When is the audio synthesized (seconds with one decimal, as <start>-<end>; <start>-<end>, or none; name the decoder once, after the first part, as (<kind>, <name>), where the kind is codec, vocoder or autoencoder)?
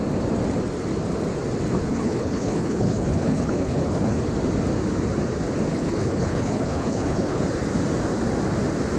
1.9-4.2 (codec, HILCodec); 5.7-7.4